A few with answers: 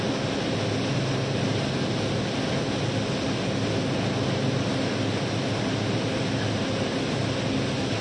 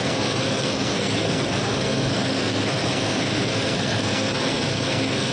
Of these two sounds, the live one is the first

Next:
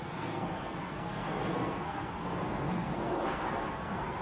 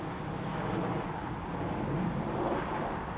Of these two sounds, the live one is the second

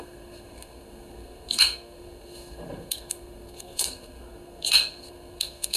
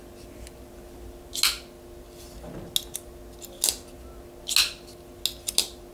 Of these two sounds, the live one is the second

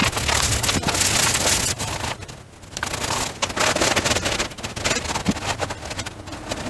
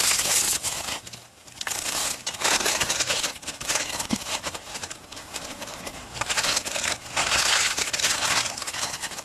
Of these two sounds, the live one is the first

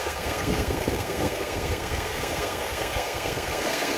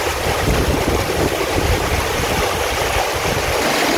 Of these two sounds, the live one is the second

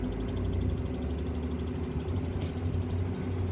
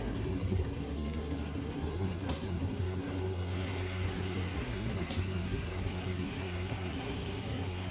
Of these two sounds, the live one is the first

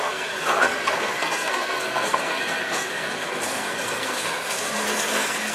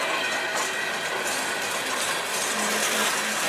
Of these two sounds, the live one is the second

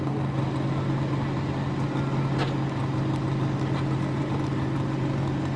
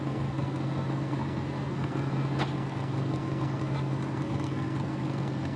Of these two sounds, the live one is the first